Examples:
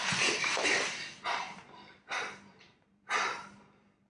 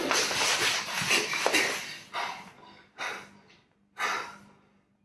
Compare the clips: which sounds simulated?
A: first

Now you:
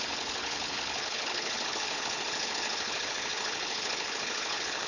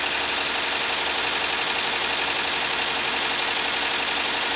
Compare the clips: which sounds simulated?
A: first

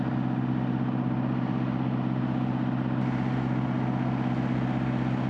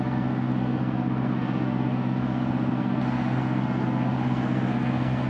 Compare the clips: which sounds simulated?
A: second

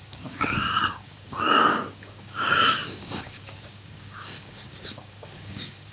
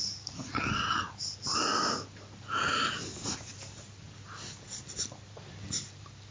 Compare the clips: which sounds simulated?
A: first